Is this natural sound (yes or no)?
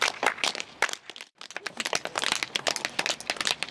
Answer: yes